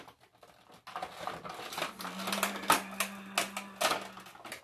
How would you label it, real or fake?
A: real